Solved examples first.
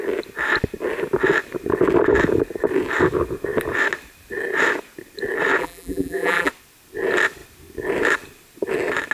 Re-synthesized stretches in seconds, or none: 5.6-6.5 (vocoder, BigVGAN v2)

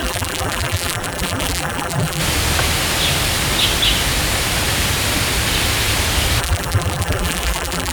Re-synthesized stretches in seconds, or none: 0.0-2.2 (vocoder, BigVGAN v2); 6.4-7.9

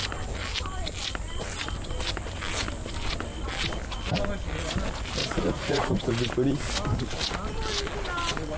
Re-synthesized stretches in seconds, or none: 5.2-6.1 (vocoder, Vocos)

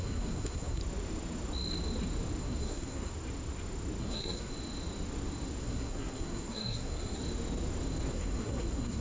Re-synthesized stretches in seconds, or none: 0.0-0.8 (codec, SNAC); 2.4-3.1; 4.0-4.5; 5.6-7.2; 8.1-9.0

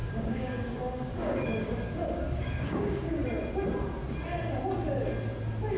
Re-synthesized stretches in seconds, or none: 0.0-3.2 (codec, DAC)

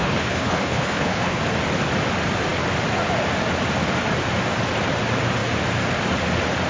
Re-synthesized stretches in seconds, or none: 0.0-1.4 (codec, HILCodec)

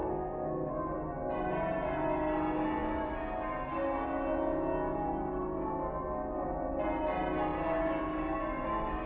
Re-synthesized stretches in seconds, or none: 0.0-0.7 (codec, SNAC)

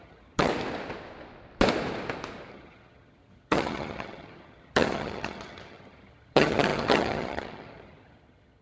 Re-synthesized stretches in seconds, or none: 0.0-0.5 (vocoder, HiFi-GAN); 2.5-8.6